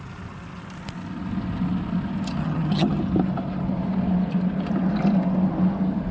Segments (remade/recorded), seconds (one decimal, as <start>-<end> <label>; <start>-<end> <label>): 0.0-2.4 recorded; 2.4-3.0 remade; 3.0-6.1 recorded